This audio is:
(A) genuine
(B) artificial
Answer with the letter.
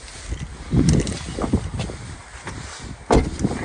A